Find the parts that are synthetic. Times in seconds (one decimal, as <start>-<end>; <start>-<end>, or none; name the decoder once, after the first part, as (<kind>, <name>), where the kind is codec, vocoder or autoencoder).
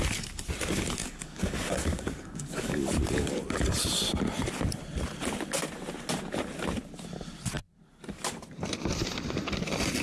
1.0-3.0 (codec, DAC)